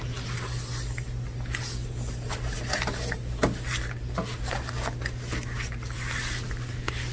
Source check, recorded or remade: recorded